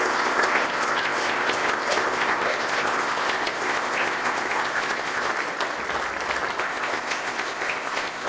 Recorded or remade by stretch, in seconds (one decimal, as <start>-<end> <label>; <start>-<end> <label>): 0.0-5.3 remade; 5.3-6.6 recorded; 6.6-8.3 remade